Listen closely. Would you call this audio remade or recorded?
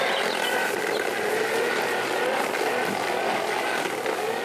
recorded